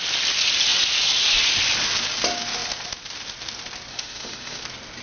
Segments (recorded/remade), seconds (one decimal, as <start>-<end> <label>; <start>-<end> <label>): 0.0-3.9 recorded; 3.9-4.6 remade; 4.6-5.0 recorded